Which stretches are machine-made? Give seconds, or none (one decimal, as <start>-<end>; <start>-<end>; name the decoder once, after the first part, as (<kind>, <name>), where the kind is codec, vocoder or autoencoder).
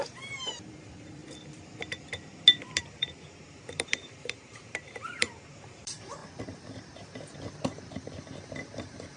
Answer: 0.0-1.2 (vocoder, BigVGAN v2); 2.8-6.2; 8.2-9.2